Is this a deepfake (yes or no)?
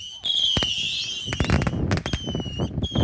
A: no